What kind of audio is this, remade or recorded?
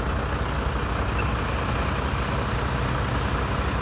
recorded